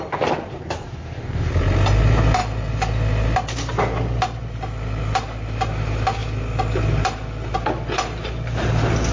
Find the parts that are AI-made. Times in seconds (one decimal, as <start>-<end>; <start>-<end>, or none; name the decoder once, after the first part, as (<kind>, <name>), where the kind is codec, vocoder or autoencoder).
0.6-1.5 (codec, DAC)